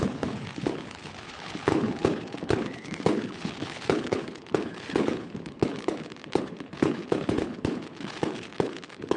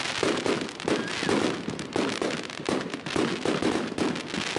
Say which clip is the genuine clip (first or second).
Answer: second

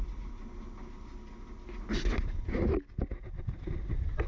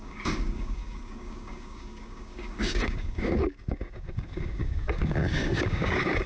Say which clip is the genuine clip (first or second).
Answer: first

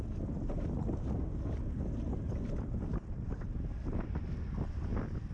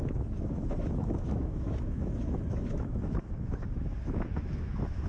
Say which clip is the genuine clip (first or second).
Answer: first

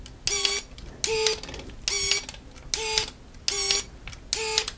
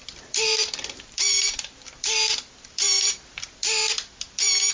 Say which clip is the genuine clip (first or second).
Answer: first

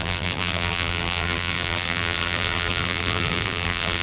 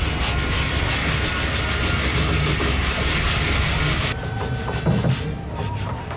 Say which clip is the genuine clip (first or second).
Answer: second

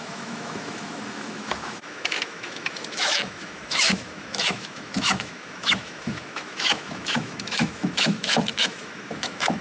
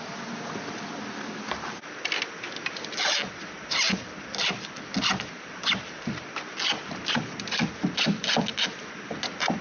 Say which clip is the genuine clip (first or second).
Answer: second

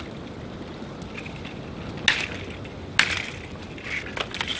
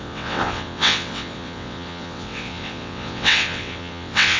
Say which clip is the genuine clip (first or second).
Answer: first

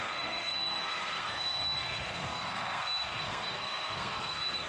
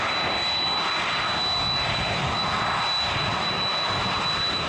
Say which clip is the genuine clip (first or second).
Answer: second